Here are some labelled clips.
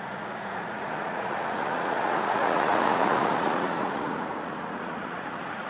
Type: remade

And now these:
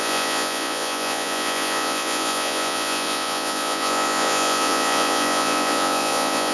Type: remade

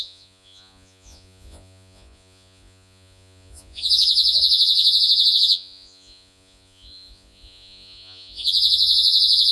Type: remade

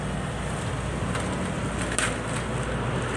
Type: recorded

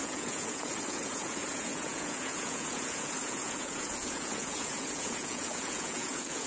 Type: remade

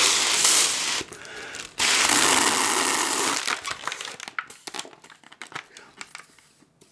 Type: recorded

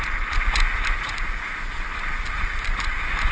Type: recorded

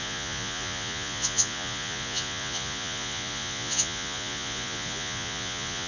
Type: remade